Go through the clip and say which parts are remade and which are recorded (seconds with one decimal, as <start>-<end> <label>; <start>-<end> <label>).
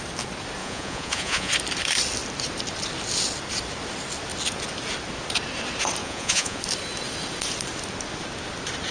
0.0-0.6 recorded; 0.6-1.5 remade; 1.5-6.0 recorded; 6.0-6.6 remade; 6.6-8.9 recorded